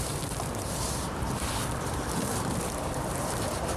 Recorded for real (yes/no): no